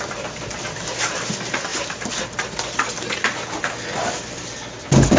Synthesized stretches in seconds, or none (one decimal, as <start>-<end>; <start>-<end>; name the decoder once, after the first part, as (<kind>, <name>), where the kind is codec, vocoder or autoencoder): none